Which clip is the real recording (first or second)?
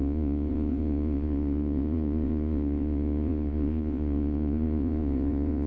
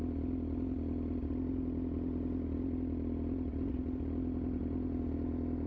second